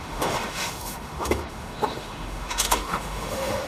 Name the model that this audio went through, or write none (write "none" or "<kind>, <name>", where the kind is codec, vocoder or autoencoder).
autoencoder, DAC-VAE